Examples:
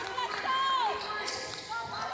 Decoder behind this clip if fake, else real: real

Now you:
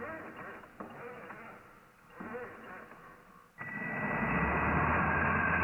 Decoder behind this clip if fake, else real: real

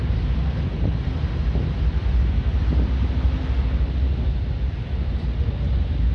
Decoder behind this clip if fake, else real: real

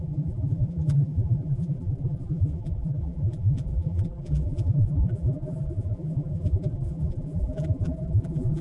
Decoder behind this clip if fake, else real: fake, vocoder, BigVGAN v2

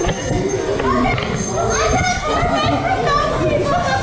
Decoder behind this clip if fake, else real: real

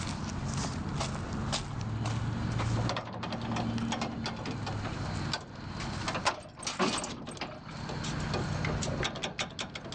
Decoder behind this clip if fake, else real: real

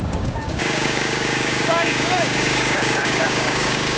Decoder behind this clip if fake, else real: fake, codec, DAC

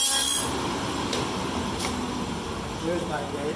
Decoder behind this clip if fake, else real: fake, vocoder, BigVGAN v2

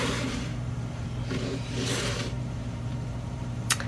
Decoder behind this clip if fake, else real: fake, vocoder, BigVGAN v2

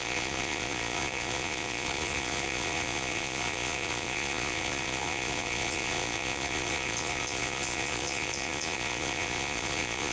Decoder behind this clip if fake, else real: fake, vocoder, Vocos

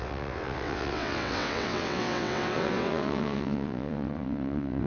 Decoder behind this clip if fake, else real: fake, vocoder, WaveNeXt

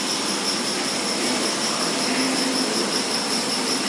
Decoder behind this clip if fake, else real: real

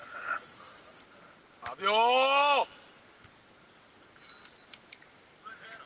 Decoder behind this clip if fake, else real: real